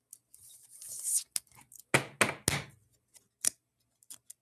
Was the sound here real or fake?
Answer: real